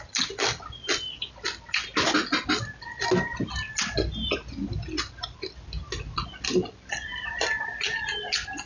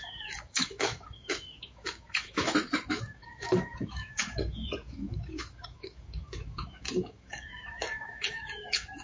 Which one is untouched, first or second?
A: first